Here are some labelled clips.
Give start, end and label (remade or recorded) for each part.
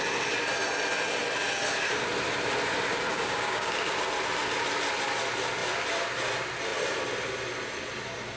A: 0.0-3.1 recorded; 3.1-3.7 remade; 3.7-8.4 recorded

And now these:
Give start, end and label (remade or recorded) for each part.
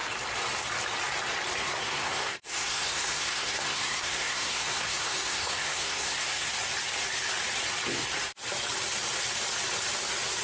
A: 0.0-1.6 recorded; 1.6-6.5 remade; 6.5-10.4 recorded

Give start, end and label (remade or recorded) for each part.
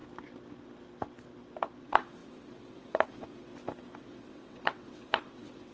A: 0.0-1.8 recorded; 1.8-3.5 remade; 3.5-4.0 recorded; 4.0-5.7 remade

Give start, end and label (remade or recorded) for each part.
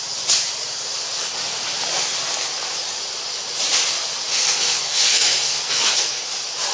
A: 0.0-4.3 recorded; 4.3-6.3 remade; 6.3-6.7 recorded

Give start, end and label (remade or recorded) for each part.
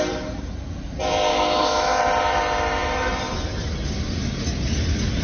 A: 0.0-1.3 recorded; 1.3-2.0 remade; 2.0-5.2 recorded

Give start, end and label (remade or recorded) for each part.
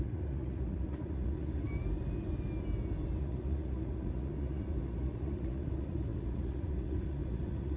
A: 0.0-1.7 remade; 1.7-3.2 recorded; 3.2-7.8 remade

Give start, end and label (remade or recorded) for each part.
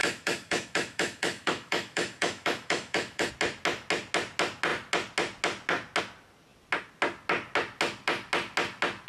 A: 0.0-3.3 remade; 3.3-9.1 recorded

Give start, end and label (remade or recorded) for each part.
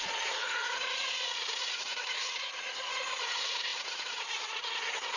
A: 0.0-5.2 remade